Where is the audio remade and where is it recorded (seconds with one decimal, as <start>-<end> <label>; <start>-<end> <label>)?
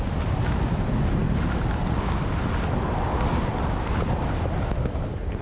0.0-5.4 recorded